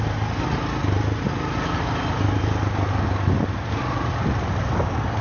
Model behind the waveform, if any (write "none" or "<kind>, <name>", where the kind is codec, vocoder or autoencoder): none